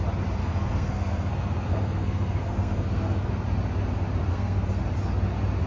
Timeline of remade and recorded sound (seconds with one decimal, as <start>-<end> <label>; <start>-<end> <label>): 0.0-0.4 recorded; 0.4-3.3 remade; 3.3-4.3 recorded; 4.3-4.8 remade; 4.8-5.7 recorded